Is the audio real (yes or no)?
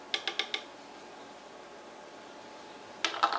yes